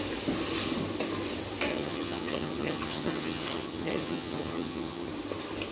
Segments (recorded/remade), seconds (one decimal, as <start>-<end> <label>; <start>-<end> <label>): 0.0-1.7 recorded; 1.7-5.1 remade; 5.1-5.7 recorded